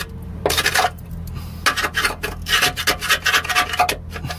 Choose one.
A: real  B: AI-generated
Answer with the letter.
A